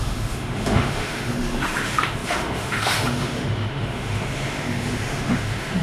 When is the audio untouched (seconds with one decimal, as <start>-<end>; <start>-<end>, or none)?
none